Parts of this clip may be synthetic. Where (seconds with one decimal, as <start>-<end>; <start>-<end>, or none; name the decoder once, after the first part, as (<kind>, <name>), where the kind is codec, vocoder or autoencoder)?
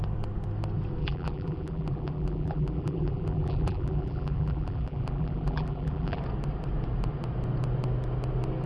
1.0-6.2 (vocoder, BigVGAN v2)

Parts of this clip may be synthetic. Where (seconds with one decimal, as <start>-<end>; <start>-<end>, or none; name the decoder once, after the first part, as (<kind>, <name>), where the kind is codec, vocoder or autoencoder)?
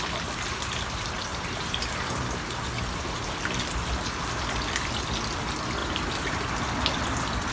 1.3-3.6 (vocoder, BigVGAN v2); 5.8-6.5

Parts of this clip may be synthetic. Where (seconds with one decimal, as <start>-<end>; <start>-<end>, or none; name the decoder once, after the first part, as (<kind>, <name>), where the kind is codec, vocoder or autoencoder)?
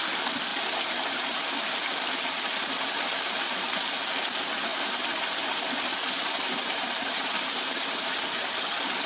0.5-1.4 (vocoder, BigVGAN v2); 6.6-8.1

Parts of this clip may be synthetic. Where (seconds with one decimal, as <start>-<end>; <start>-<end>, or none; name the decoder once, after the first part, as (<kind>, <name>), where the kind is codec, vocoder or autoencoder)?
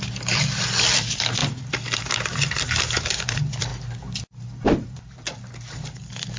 0.0-3.7 (vocoder, BigVGAN v2); 4.2-6.4